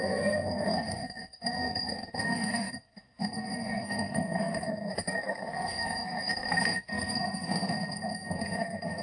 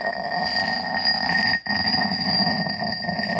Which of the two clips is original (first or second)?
second